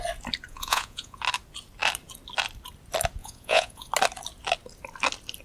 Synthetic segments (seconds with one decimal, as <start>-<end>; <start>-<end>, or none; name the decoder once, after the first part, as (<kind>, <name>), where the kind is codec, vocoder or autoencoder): 0.5-1.2 (vocoder, Vocos); 3.2-3.9